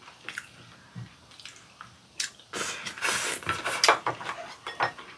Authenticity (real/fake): real